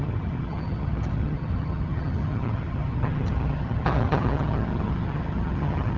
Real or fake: fake